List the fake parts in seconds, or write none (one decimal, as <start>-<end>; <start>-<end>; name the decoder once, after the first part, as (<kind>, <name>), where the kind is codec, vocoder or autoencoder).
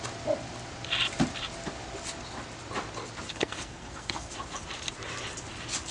3.3-4.3 (codec, SNAC)